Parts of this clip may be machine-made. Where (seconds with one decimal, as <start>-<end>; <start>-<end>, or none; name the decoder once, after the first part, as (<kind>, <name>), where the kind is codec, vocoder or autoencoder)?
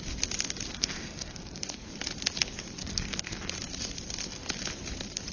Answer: 0.7-1.9 (codec, SNAC); 2.8-3.5